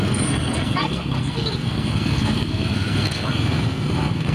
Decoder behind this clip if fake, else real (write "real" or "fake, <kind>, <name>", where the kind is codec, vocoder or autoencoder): fake, codec, SNAC